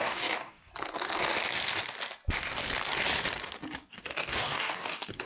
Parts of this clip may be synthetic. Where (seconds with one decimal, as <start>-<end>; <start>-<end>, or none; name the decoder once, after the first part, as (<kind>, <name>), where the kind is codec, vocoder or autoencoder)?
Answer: 0.0-0.7 (codec, DAC); 3.9-5.3